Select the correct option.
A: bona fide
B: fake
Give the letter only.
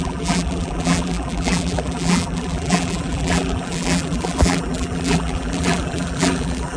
B